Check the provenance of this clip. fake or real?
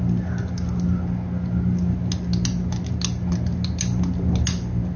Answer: real